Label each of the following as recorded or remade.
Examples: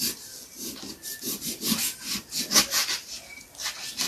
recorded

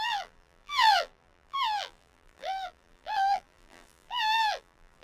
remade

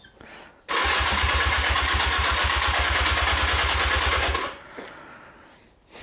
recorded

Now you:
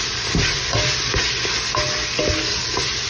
recorded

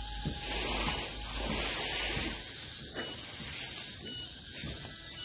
recorded